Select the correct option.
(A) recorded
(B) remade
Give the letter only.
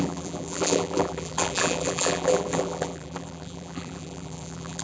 B